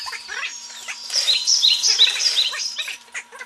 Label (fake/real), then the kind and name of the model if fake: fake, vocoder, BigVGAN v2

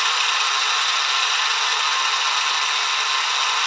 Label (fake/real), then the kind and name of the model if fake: real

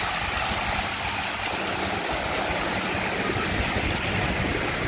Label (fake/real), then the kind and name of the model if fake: real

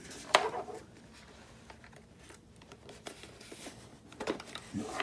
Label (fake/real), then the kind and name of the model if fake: fake, vocoder, BigVGAN v2